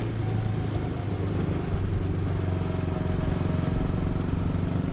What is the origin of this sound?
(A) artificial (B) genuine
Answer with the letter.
B